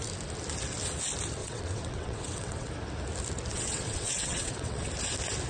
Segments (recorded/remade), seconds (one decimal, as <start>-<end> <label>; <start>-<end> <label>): 0.0-1.4 recorded; 1.4-2.7 remade; 2.7-3.5 recorded; 3.5-4.9 remade; 4.9-5.5 recorded